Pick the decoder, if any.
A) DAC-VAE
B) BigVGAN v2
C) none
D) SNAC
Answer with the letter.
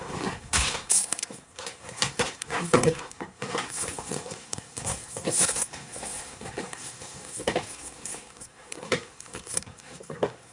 D